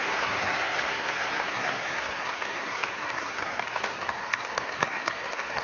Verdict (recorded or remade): remade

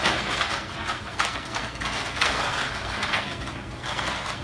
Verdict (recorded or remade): remade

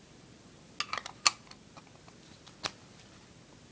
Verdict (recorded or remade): recorded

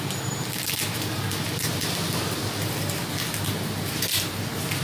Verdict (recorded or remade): recorded